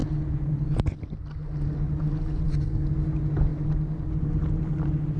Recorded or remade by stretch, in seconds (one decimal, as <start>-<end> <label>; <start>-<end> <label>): 0.0-5.2 recorded